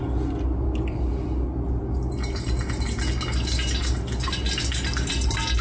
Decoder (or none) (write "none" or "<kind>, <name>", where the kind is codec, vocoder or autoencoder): none